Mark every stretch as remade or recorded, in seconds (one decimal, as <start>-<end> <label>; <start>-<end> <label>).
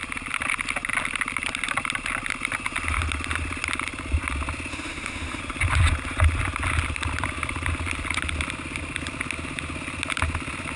0.0-4.7 recorded; 4.7-5.4 remade; 5.4-10.8 recorded